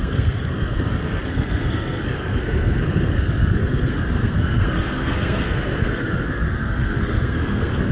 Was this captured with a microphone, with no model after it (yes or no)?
no